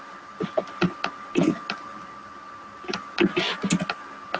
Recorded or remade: recorded